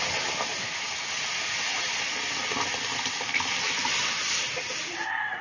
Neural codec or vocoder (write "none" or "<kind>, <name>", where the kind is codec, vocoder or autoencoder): none